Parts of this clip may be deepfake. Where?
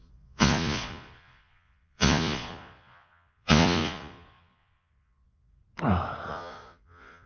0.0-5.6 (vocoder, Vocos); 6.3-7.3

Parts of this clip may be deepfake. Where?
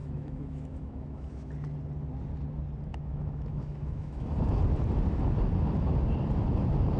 0.0-1.5 (autoencoder, DAC-VAE); 2.9-4.6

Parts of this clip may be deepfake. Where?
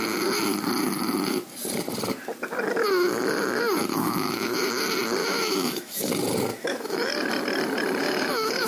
3.9-4.7 (autoencoder, DAC-VAE); 5.2-6.1; 6.5-7.1; 8.0-8.7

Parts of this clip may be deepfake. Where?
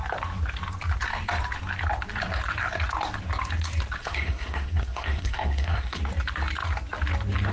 4.0-6.0 (codec, SNAC)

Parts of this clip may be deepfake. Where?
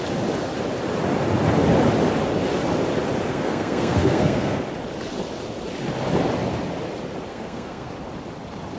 3.3-4.6 (codec, SNAC); 7.3-7.9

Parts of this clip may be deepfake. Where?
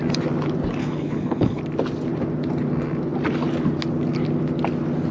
0.8-1.6 (codec, HILCodec)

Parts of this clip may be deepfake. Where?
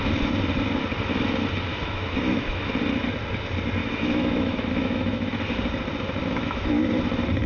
1.7-2.7 (autoencoder, DAC-VAE); 3.8-5.4; 6.2-6.8